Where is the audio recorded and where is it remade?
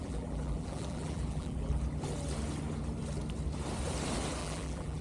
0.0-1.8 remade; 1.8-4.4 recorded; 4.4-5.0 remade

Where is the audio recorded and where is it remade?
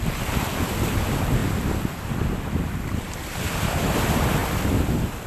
0.0-1.4 remade; 1.4-3.4 recorded; 3.4-4.4 remade; 4.4-5.3 recorded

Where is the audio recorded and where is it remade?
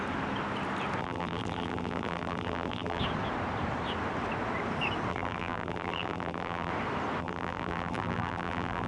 0.0-1.0 recorded; 1.0-3.0 remade; 3.0-5.1 recorded; 5.1-6.7 remade; 6.7-7.2 recorded; 7.2-8.9 remade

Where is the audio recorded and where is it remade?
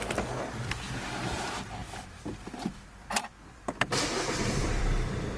0.0-5.4 remade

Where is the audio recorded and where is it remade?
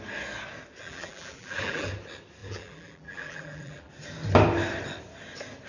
0.0-0.8 recorded; 0.8-1.9 remade; 1.9-2.4 recorded; 2.4-3.9 remade; 3.9-5.7 recorded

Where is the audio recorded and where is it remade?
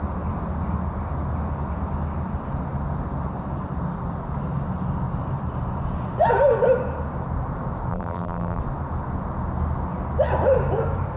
0.0-7.9 recorded; 7.9-8.6 remade; 8.6-11.2 recorded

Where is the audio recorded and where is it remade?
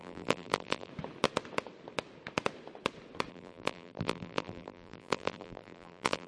0.0-0.9 remade; 0.9-3.3 recorded; 3.3-6.3 remade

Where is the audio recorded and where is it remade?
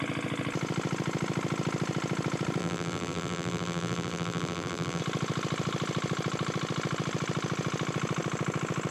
0.0-2.6 recorded; 2.6-5.0 remade; 5.0-8.9 recorded